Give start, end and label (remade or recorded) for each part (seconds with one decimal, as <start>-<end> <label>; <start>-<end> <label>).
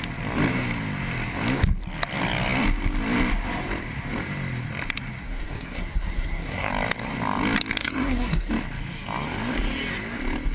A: 0.0-5.2 recorded; 5.2-6.7 remade; 6.7-7.8 recorded; 7.8-8.5 remade; 8.5-10.5 recorded